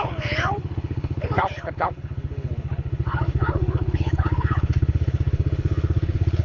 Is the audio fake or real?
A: fake